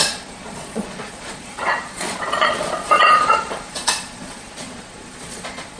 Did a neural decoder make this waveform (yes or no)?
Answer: yes